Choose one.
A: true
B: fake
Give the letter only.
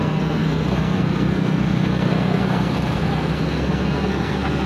B